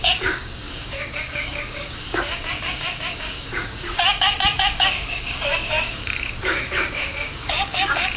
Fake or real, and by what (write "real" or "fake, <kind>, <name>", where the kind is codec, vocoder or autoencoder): fake, codec, DAC